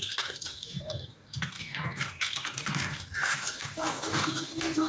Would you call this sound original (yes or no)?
no